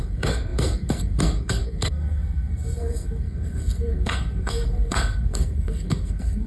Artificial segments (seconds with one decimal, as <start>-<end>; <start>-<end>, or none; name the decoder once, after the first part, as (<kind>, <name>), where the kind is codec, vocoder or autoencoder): 0.0-6.5 (codec, SNAC)